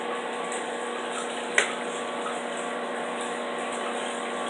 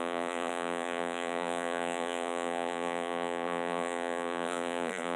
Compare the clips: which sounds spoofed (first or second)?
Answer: second